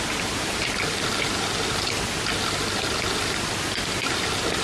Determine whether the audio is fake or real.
real